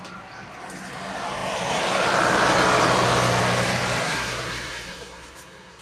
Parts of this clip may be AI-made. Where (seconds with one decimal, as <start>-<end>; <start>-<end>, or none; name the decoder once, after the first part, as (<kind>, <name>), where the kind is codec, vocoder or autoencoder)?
4.0-5.8 (codec, SNAC)